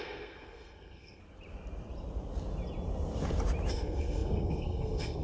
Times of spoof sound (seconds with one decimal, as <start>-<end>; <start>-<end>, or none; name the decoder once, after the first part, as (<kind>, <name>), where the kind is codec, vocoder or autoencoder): 0.0-1.2 (codec, SNAC); 3.7-5.2